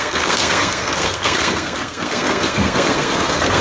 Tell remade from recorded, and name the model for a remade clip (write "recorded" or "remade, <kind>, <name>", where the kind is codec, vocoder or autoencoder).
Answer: remade, codec, SNAC